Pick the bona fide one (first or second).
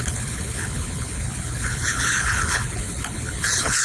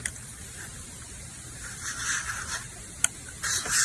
second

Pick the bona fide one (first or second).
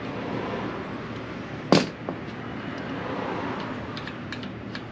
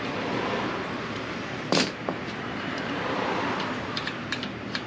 first